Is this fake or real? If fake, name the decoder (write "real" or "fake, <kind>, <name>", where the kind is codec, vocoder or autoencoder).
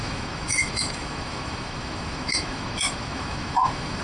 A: fake, autoencoder, DAC-VAE